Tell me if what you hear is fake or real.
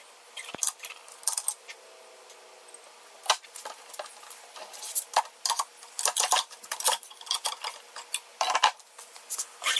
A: real